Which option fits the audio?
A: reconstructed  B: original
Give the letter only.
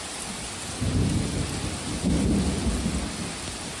B